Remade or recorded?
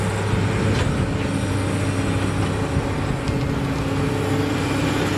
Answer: recorded